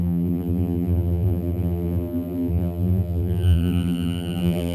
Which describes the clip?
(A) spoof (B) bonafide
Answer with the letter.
A